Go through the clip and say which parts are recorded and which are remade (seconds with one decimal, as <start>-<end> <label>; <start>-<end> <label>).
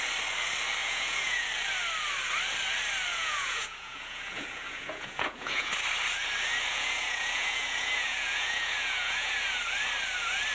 0.0-0.8 recorded; 0.8-1.5 remade; 1.5-3.1 recorded; 3.1-5.7 remade; 5.7-6.7 recorded; 6.7-9.6 remade; 9.6-10.5 recorded